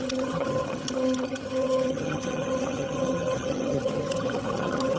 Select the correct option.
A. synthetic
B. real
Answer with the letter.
A